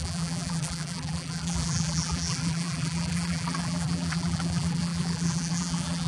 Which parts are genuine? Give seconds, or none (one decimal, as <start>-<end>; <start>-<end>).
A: none